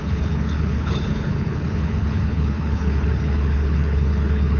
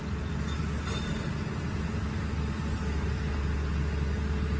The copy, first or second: first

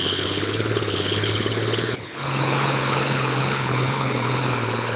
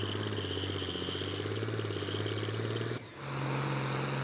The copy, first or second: first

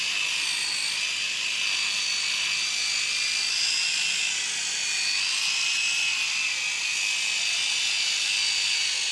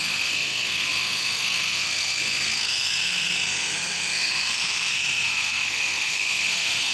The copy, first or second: second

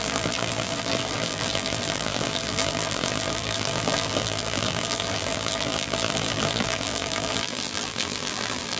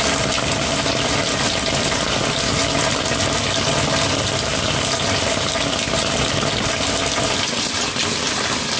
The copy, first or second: first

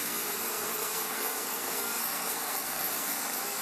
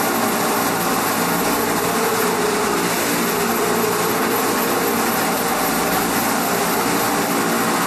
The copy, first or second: first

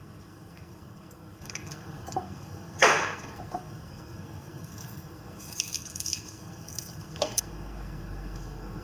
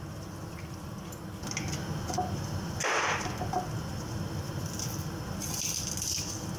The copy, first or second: first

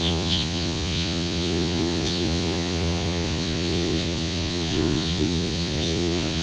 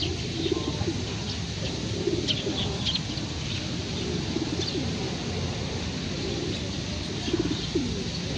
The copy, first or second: first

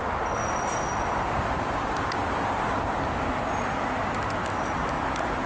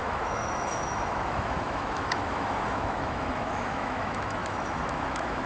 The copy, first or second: second